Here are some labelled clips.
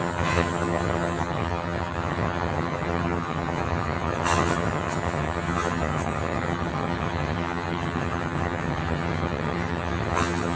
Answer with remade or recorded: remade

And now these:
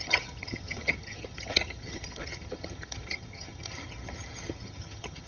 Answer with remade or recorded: remade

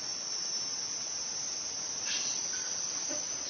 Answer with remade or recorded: recorded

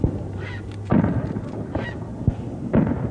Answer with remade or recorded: recorded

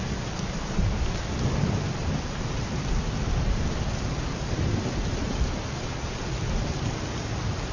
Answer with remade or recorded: recorded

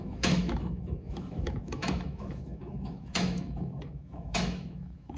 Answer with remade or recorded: remade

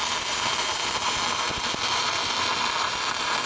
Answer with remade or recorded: recorded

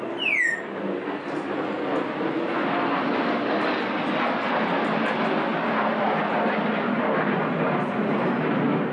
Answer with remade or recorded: recorded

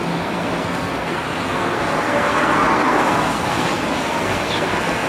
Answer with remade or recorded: remade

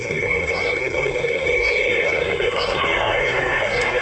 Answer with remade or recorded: remade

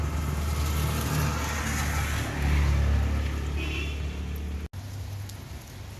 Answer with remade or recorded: recorded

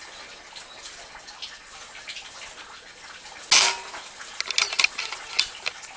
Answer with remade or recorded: recorded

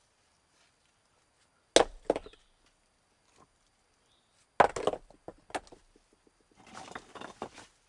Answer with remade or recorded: recorded